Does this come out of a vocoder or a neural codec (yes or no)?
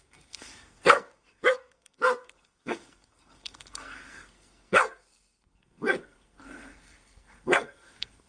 yes